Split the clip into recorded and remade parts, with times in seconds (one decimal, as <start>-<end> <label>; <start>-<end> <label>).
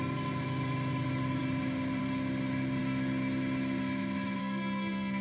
0.0-4.4 recorded; 4.4-5.2 remade